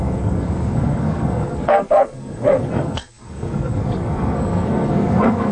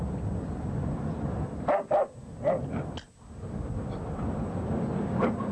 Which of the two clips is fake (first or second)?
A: first